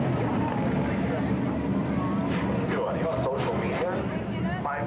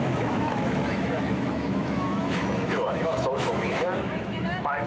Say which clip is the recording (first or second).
first